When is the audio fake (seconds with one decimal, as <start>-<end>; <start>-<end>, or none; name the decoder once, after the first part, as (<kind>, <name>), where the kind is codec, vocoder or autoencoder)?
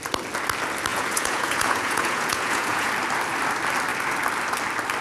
0.9-2.9 (vocoder, Vocos)